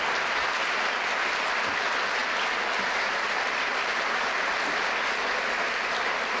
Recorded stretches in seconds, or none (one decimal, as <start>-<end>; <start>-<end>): 0.0-6.4